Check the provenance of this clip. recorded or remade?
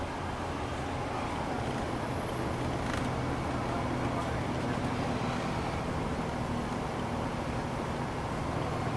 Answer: recorded